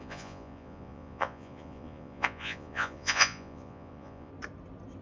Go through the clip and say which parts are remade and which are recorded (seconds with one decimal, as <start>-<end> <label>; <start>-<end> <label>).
0.0-4.3 remade; 4.3-5.0 recorded